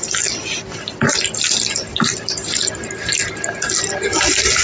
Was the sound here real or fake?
real